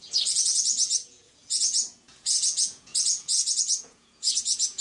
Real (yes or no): no